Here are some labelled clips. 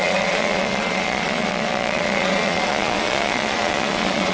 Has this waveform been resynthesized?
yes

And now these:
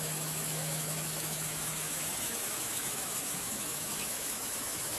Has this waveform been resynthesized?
yes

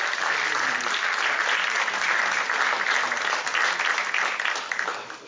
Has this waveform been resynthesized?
no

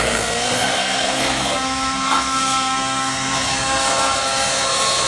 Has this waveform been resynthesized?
yes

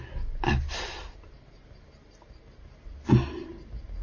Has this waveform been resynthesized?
no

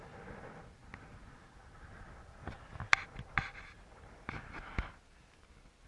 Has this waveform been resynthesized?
no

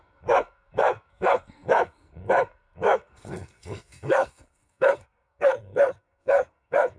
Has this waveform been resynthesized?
yes